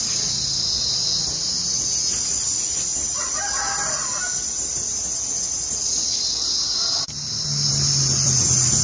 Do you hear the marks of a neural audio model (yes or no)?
no